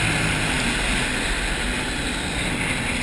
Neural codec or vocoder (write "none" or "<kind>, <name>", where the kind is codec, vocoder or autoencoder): none